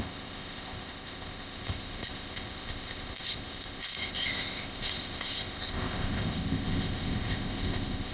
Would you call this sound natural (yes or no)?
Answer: no